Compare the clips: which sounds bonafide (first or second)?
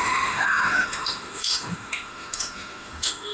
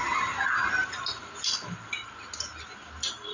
second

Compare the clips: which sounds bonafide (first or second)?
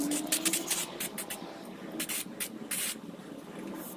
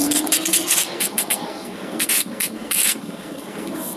first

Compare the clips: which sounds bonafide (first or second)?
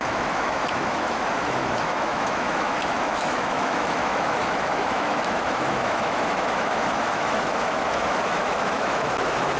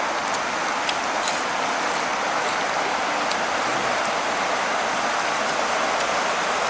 second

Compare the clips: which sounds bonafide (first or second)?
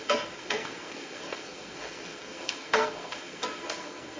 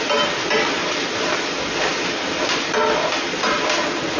second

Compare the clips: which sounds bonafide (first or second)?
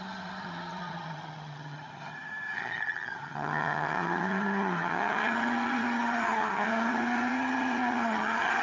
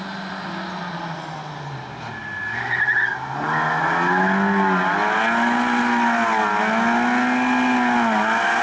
second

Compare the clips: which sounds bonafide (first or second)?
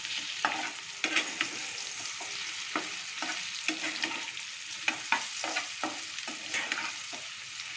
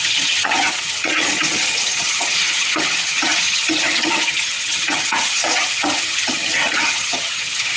first